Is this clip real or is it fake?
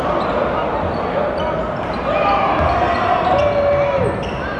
real